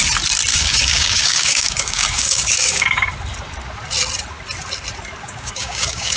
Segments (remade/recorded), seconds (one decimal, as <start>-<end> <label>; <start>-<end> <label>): 0.0-0.5 recorded; 0.5-3.1 remade; 3.1-5.2 recorded; 5.2-6.2 remade